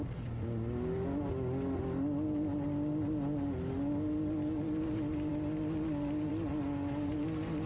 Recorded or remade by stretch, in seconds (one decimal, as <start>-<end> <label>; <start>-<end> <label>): 0.0-7.7 recorded